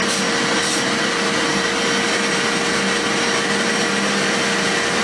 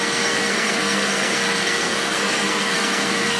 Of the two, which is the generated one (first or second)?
second